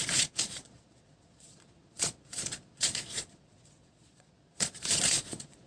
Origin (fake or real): fake